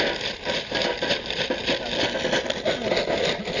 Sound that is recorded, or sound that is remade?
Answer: recorded